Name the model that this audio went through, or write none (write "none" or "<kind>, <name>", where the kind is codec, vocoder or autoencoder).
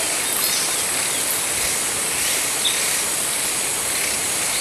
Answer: none